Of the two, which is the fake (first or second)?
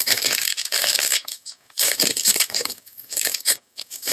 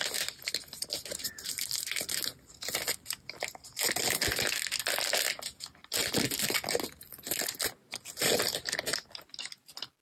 first